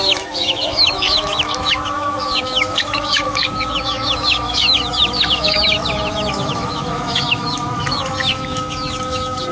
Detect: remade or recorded remade